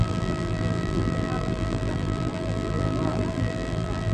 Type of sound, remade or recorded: remade